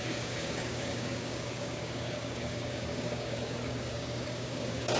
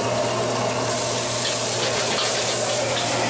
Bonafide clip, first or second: second